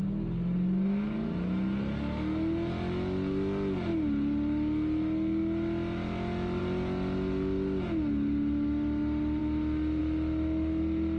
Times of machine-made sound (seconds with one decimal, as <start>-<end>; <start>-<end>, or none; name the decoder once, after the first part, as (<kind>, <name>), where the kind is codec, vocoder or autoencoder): none